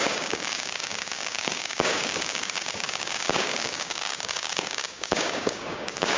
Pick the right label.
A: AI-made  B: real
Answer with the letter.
A